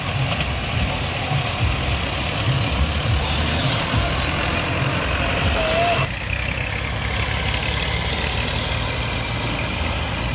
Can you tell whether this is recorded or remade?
recorded